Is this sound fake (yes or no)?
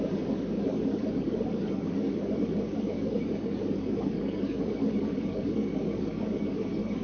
yes